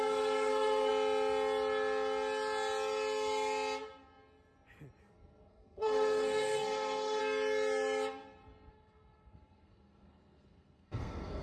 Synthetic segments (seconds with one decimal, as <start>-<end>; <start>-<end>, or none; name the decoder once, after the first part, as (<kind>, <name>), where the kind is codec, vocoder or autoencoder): 0.0-0.9 (codec, SNAC); 5.0-7.2; 8.7-11.4